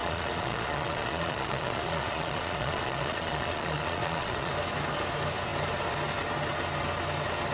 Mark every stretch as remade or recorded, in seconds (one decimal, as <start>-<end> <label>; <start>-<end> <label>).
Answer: 0.0-4.5 remade; 4.5-7.5 recorded